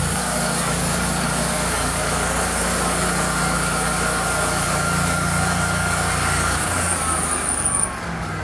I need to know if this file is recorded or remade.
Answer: remade